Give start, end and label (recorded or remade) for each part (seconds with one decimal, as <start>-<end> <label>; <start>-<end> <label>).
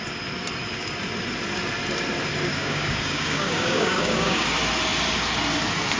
0.0-2.5 recorded; 2.5-4.5 remade; 4.5-6.0 recorded